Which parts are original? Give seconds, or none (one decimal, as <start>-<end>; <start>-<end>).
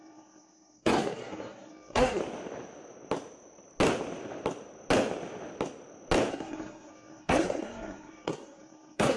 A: 2.2-6.3